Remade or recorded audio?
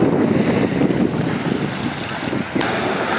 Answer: recorded